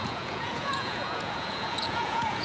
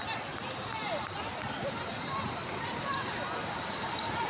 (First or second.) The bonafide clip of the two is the second